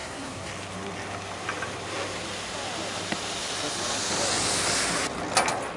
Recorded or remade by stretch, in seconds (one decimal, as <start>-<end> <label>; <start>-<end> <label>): 0.0-0.5 remade; 0.5-5.8 recorded